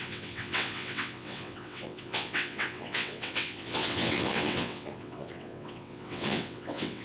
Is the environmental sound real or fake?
fake